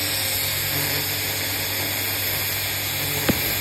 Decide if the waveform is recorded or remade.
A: recorded